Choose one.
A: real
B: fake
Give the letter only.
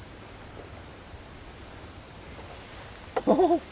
A